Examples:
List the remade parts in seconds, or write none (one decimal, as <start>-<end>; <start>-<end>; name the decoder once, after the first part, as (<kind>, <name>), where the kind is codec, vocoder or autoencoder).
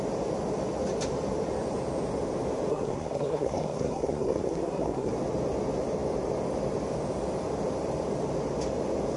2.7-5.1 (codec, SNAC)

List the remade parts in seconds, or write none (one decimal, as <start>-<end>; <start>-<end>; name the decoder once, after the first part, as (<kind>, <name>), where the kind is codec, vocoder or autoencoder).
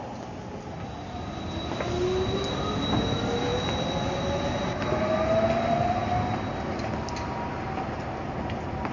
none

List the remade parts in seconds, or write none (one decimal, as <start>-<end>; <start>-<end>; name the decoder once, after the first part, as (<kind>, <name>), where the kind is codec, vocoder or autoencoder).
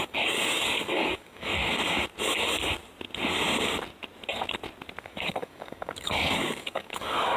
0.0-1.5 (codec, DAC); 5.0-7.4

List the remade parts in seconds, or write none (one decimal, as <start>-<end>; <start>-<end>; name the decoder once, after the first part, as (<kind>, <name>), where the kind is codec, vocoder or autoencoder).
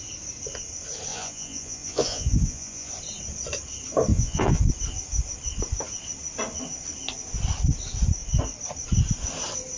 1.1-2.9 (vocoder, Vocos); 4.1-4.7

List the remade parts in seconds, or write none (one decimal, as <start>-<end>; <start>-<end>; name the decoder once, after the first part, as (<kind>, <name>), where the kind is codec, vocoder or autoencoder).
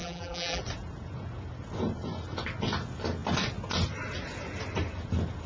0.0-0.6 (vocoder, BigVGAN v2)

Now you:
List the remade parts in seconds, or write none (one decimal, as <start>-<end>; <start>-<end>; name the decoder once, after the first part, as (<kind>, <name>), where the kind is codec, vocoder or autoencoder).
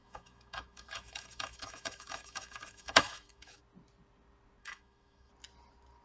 0.0-3.6 (autoencoder, DAC-VAE); 4.6-5.3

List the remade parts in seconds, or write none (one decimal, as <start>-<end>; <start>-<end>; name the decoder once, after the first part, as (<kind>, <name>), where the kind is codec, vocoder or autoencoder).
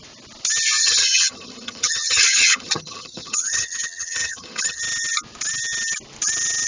0.8-4.8 (vocoder, HiFi-GAN)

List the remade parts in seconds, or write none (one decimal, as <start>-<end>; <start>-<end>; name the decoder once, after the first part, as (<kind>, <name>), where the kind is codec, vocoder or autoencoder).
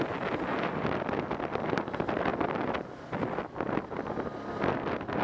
2.3-3.4 (vocoder, BigVGAN v2)